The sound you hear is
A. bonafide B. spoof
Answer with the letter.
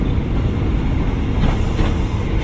B